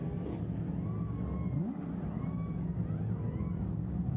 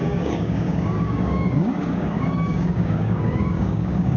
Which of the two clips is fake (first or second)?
second